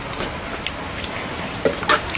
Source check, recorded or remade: recorded